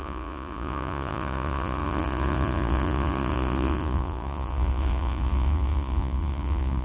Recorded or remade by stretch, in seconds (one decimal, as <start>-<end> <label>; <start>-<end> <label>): 0.0-6.8 remade